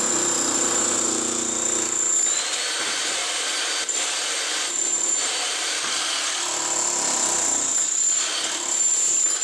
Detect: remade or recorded recorded